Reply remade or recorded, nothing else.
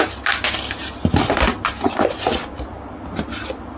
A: recorded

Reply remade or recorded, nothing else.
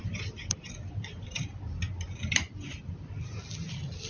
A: recorded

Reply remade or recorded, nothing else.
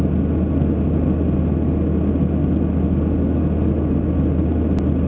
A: recorded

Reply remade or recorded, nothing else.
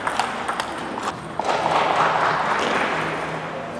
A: recorded